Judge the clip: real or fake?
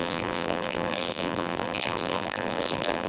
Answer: fake